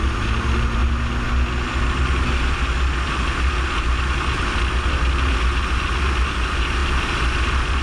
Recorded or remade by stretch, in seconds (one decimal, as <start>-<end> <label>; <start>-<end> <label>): 0.0-7.8 recorded